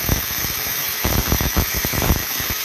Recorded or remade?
remade